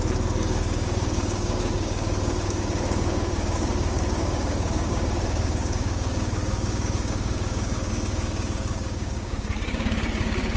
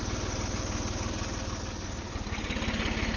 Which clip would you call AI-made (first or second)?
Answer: first